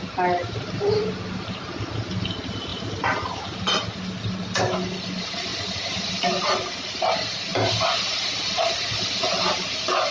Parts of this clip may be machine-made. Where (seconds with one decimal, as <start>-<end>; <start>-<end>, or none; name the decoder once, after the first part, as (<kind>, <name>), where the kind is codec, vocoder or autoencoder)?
2.7-3.6 (vocoder, BigVGAN v2); 5.5-6.1